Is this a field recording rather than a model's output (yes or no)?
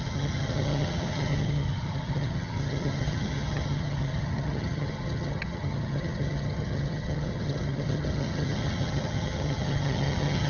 no